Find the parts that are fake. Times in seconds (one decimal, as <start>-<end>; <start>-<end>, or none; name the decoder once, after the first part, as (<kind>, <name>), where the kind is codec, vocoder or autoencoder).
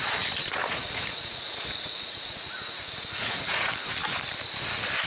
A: 0.6-3.7 (vocoder, Vocos)